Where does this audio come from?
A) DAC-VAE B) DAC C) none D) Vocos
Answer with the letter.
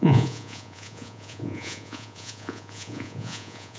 D